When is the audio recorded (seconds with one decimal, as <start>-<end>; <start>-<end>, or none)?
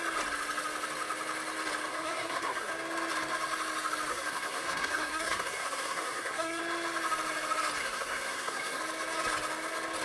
0.0-1.9; 2.7-4.1; 6.6-7.8; 8.8-10.0